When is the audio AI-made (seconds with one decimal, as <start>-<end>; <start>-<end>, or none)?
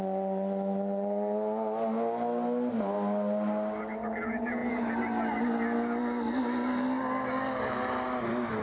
none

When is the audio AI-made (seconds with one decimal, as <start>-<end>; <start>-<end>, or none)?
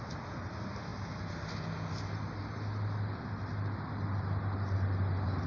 none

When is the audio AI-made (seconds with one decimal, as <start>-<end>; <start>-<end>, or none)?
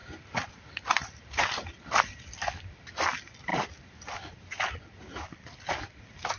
0.0-6.4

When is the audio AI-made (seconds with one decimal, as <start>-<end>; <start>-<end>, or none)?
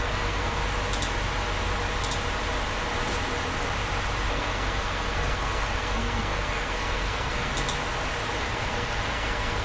0.0-0.6; 4.3-7.5; 8.4-9.6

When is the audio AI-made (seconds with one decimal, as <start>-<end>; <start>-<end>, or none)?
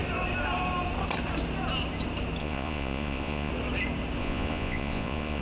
2.4-3.5; 4.2-5.4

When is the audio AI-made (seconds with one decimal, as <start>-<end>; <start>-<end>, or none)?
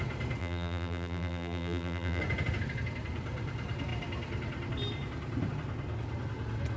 0.4-2.2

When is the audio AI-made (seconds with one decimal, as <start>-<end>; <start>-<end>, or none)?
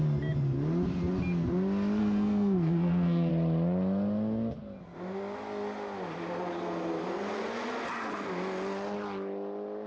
2.0-3.3